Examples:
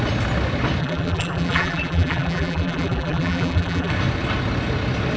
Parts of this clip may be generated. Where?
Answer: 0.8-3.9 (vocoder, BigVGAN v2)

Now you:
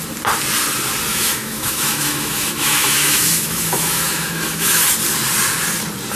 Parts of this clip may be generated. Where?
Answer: 1.1-4.8 (autoencoder, DAC-VAE)

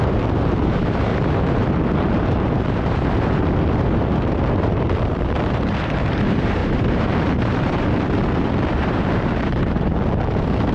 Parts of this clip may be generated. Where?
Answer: 0.0-1.1 (vocoder, BigVGAN v2); 1.6-10.7

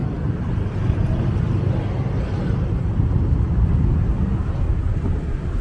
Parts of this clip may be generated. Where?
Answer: none

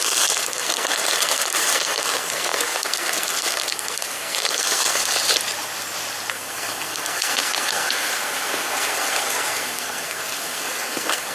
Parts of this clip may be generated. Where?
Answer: 0.0-5.0 (codec, SNAC); 6.3-11.3

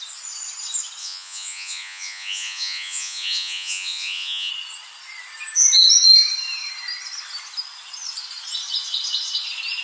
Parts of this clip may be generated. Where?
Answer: 1.0-4.5 (vocoder, Vocos)

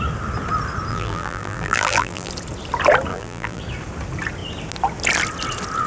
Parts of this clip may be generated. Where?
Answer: 0.9-2.3 (vocoder, BigVGAN v2); 3.1-3.6